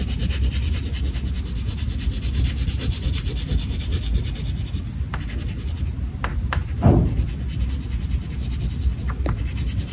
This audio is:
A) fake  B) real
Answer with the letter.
B